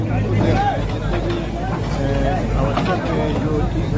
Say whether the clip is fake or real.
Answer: real